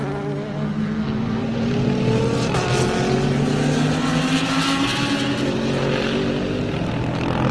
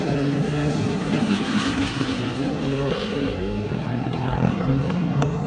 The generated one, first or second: second